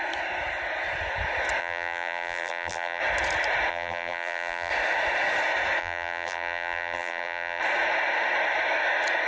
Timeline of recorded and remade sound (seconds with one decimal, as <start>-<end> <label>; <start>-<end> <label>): 0.0-1.6 recorded; 1.6-3.0 remade; 3.0-3.7 recorded; 3.7-4.7 remade; 4.7-5.8 recorded; 5.8-7.6 remade; 7.6-9.3 recorded